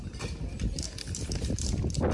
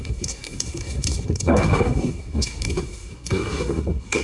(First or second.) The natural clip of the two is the first